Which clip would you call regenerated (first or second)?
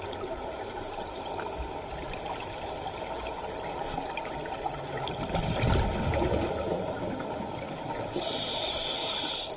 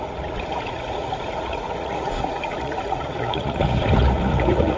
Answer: second